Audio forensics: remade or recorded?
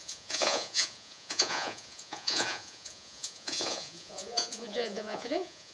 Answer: remade